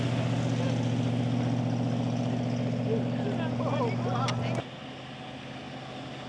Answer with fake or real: real